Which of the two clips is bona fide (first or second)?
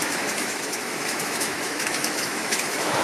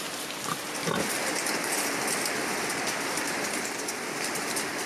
second